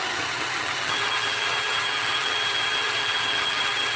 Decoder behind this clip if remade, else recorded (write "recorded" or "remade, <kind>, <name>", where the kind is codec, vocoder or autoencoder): remade, vocoder, HiFi-GAN